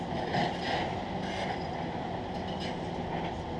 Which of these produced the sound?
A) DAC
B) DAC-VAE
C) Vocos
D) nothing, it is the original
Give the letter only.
D